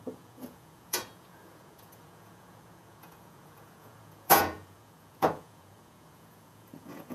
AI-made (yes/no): yes